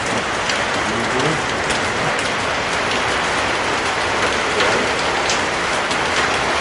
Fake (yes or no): no